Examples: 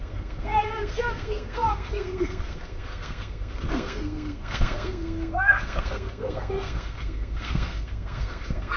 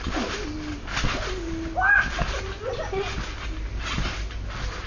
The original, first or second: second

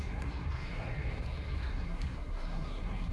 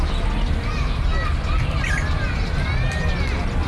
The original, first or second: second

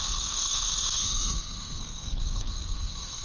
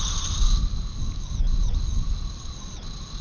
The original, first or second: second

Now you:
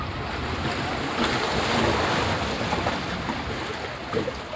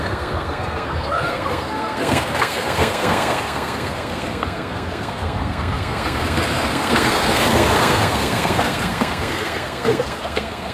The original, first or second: first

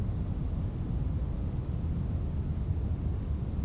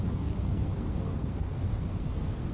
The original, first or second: first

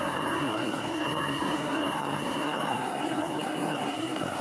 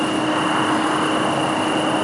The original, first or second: second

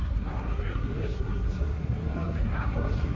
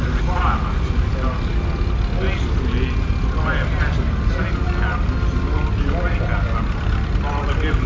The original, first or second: second